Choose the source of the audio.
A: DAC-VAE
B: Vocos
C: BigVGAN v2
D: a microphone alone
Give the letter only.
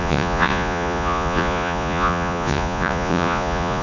B